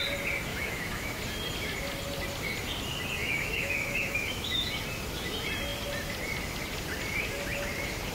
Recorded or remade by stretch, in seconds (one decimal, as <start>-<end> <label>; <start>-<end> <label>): 0.0-0.5 recorded; 0.5-1.2 remade; 1.2-3.2 recorded; 3.2-4.7 remade; 4.7-8.1 recorded